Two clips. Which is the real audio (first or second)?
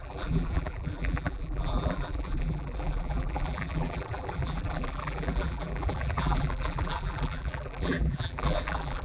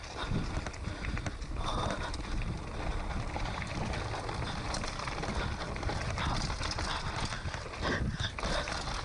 second